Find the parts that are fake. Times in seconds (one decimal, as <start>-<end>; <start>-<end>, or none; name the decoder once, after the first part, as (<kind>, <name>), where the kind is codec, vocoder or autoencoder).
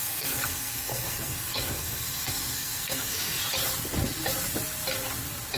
0.0-3.4 (codec, SNAC)